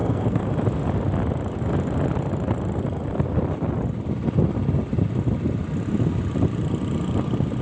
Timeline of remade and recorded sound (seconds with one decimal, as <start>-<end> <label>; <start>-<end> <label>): 0.0-0.5 remade; 0.5-7.6 recorded